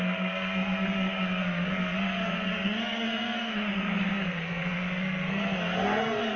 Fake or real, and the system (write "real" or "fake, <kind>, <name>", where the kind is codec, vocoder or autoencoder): fake, codec, SNAC